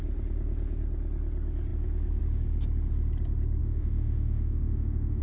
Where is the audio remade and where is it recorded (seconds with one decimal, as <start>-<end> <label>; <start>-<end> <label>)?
0.0-3.6 recorded; 3.6-5.2 remade